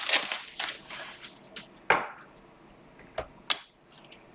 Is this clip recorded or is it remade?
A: recorded